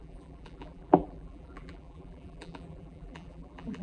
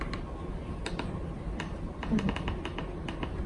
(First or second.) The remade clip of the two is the first